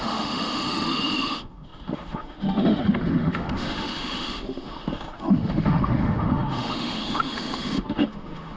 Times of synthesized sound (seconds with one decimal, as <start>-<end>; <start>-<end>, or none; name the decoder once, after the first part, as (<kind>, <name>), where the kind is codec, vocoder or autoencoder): 0.0-8.6 (autoencoder, DAC-VAE)